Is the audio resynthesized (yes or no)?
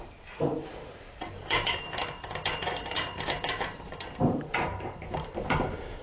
yes